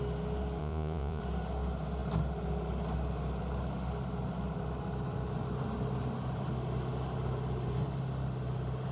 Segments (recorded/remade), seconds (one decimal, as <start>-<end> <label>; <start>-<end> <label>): 0.0-0.6 recorded; 0.6-1.2 remade; 1.2-8.9 recorded